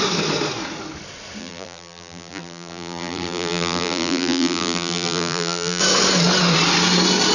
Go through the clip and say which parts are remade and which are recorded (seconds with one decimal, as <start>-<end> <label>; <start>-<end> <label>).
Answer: 0.0-1.4 recorded; 1.4-5.8 remade; 5.8-7.3 recorded